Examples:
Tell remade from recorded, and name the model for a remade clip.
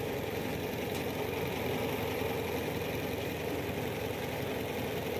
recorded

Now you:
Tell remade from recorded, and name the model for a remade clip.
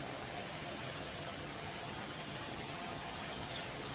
remade, vocoder, HiFi-GAN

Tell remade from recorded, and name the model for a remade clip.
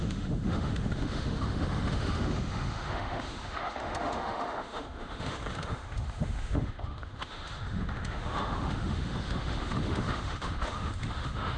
remade, autoencoder, DAC-VAE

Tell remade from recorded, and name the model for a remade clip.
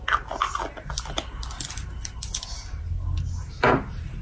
recorded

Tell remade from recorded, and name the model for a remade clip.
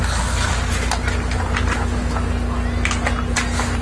recorded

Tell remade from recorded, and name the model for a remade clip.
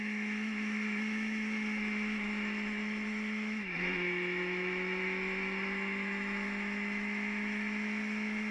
remade, autoencoder, DAC-VAE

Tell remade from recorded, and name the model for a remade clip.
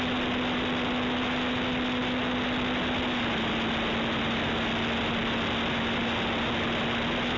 recorded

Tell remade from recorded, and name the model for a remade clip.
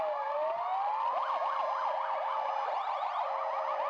recorded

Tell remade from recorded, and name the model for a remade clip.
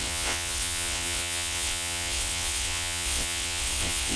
remade, vocoder, WaveNeXt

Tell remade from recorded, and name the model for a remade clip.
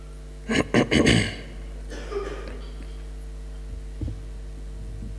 recorded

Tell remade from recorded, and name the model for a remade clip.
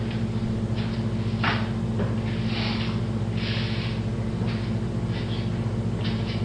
recorded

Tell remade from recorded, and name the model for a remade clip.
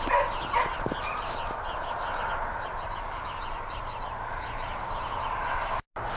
recorded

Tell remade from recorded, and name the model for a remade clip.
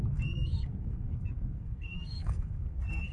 remade, codec, SNAC